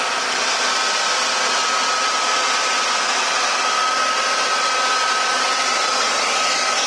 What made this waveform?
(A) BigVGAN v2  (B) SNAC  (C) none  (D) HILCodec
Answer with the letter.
C